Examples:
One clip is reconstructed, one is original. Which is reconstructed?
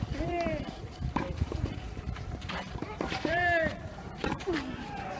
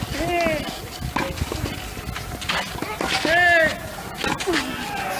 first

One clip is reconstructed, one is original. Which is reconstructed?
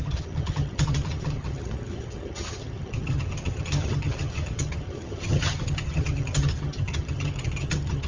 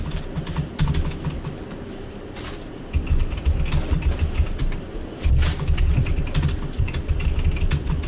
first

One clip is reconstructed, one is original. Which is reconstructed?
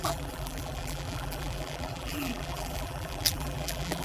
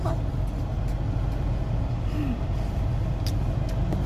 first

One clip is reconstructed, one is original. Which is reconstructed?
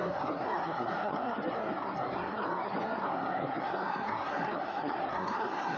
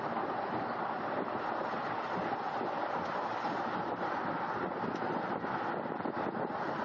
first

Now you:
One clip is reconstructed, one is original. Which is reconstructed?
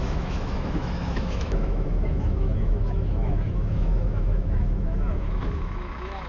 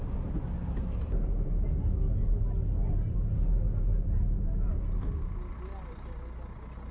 first